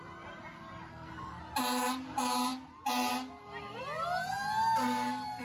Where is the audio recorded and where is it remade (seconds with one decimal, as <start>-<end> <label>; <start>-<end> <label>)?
0.0-0.9 recorded; 0.9-1.4 remade; 1.4-5.4 recorded